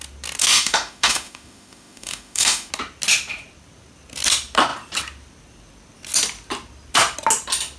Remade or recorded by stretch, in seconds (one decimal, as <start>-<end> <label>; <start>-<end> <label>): 0.0-0.4 recorded; 0.4-2.7 remade; 2.7-7.8 recorded